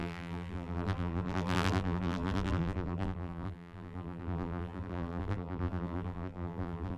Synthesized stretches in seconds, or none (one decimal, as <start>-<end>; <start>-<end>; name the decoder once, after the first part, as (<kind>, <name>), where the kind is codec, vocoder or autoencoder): 0.0-7.0 (vocoder, BigVGAN v2)